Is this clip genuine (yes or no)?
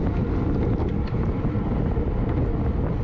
yes